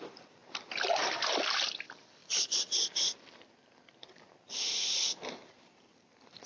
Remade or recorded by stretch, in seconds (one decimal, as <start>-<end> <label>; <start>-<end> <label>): 0.0-0.4 recorded; 0.4-1.4 remade; 1.4-2.2 recorded; 2.2-6.1 remade; 6.1-6.5 recorded